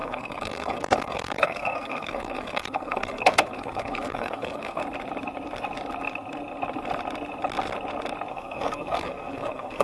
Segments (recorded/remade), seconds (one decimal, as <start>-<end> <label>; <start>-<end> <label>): 0.0-4.8 remade; 4.8-8.3 recorded; 8.3-9.8 remade